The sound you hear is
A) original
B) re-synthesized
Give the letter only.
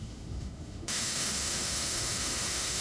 B